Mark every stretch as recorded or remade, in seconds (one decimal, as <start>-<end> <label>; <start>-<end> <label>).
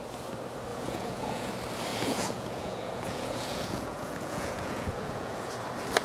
0.0-0.7 recorded; 0.7-1.5 remade; 1.5-1.9 recorded; 1.9-5.5 remade; 5.5-6.0 recorded